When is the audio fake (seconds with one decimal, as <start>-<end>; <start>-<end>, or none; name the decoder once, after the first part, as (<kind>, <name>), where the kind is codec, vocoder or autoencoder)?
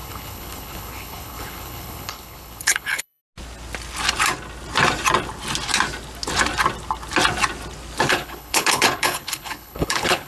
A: 0.0-3.2 (codec, HILCodec); 8.1-10.3